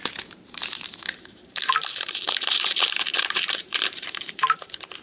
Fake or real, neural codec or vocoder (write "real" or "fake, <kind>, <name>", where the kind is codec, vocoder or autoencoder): fake, vocoder, BigVGAN v2